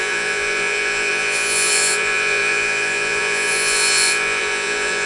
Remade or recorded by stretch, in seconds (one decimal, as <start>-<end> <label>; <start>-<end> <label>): 0.0-5.1 remade